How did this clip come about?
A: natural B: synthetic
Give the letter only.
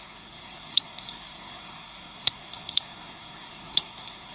B